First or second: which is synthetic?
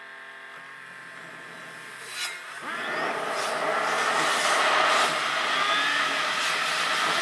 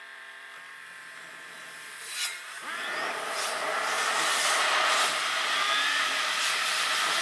second